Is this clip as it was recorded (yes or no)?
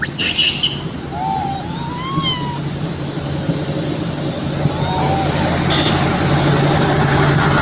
yes